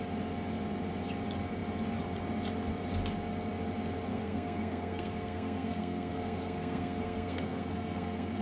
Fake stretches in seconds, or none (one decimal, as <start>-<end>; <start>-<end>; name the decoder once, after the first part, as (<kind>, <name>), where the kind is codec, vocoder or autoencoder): 4.1-8.4 (codec, SNAC)